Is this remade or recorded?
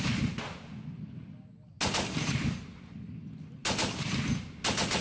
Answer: recorded